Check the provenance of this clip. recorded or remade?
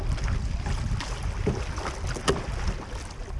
recorded